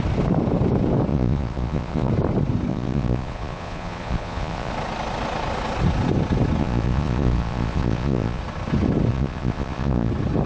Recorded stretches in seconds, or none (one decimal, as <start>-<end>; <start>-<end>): 0.0-1.1; 2.1-2.7; 4.7-6.6; 8.4-9.1; 10.1-10.5